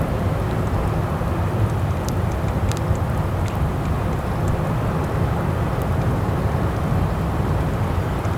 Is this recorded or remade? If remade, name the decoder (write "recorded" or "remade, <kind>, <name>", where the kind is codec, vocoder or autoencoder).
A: recorded